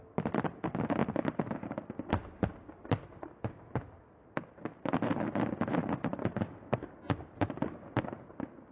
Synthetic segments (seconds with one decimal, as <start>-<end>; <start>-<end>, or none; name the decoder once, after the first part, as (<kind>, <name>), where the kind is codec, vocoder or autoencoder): none

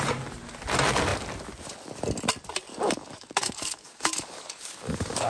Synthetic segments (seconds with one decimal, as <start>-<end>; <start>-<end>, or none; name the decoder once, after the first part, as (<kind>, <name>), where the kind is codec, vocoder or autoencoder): 2.7-5.3 (codec, DAC)